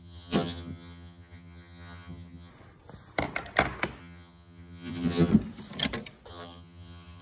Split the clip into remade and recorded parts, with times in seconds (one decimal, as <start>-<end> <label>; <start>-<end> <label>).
0.0-2.5 remade; 2.5-4.0 recorded; 4.0-5.3 remade; 5.3-6.3 recorded; 6.3-7.2 remade